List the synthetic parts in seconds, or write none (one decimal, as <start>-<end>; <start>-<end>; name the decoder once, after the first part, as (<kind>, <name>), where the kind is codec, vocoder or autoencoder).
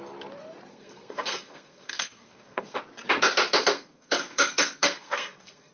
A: 0.7-2.8 (codec, SNAC); 3.6-5.7